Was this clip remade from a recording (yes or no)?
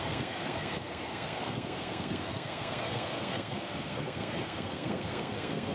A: yes